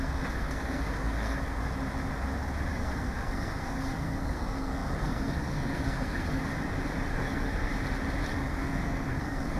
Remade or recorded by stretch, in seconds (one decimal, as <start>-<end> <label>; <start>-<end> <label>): 0.0-1.6 remade; 1.6-2.7 recorded; 2.7-6.5 remade; 6.5-7.1 recorded; 7.1-7.7 remade; 7.7-8.3 recorded; 8.3-9.6 remade